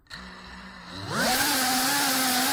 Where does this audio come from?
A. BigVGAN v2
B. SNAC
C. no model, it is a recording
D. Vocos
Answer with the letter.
C